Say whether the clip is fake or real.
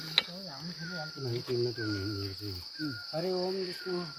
real